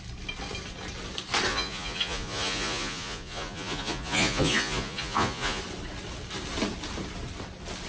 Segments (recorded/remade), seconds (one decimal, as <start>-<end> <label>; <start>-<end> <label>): 0.0-1.5 recorded; 1.5-5.6 remade; 5.6-7.9 recorded